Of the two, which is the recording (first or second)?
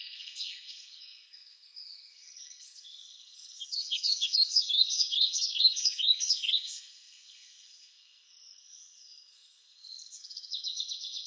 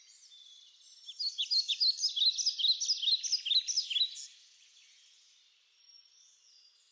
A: second